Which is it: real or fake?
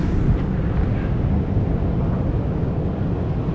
real